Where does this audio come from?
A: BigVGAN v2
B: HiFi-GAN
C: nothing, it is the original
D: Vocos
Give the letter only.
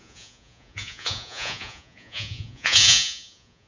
D